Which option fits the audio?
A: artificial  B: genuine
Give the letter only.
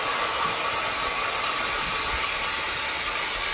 B